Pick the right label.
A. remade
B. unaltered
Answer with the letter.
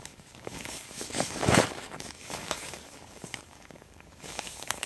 A